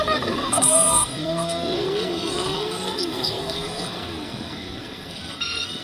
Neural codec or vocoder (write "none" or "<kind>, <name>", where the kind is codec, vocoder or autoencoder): codec, SNAC